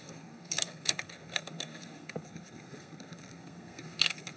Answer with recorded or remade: remade